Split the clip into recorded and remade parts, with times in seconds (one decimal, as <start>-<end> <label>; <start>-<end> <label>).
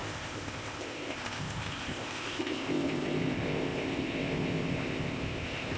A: 0.0-5.8 remade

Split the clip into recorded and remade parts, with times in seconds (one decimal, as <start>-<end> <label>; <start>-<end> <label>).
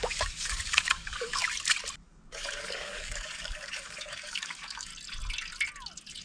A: 0.0-1.4 remade; 1.4-2.0 recorded; 2.0-4.9 remade; 4.9-6.2 recorded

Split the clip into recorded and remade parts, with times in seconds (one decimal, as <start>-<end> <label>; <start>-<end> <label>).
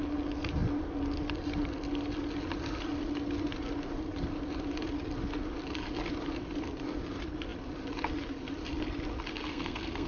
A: 0.0-9.3 recorded; 9.3-10.1 remade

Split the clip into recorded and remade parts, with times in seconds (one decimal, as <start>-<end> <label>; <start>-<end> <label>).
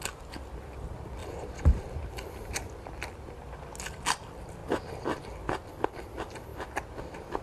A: 0.0-7.4 recorded